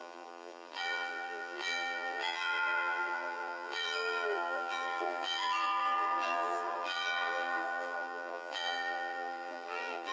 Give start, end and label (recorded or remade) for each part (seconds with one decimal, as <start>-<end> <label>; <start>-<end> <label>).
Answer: 0.0-10.1 remade